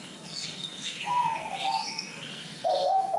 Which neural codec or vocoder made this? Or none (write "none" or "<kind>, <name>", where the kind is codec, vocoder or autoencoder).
codec, SNAC